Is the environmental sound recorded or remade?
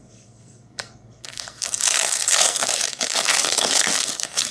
remade